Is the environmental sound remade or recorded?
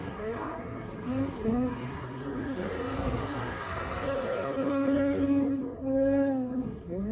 remade